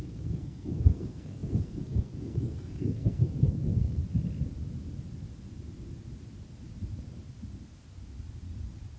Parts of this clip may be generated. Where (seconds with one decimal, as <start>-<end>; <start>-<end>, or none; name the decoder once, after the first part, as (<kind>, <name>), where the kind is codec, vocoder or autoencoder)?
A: 0.0-4.0 (codec, SNAC)